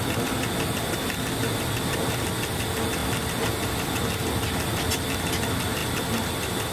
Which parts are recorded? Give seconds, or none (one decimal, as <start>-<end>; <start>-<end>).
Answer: 0.0-6.7